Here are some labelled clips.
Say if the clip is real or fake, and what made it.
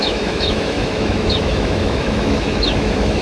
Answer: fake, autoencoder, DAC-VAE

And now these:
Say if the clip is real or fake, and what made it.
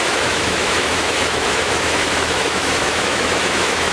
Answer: fake, autoencoder, DAC-VAE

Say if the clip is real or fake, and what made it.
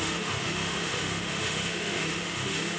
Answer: fake, autoencoder, DAC-VAE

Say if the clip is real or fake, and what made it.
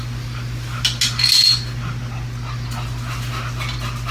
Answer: real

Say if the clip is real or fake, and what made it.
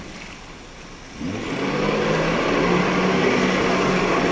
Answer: real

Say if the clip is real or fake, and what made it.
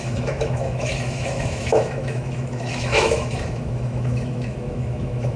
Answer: fake, autoencoder, DAC-VAE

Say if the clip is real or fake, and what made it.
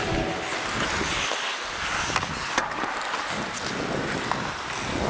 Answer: real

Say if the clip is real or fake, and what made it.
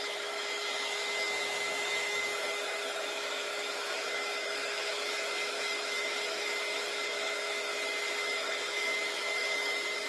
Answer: fake, autoencoder, DAC-VAE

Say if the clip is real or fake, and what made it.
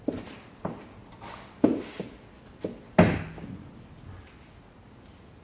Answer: real